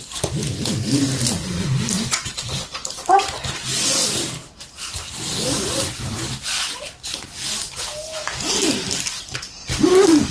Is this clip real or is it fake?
real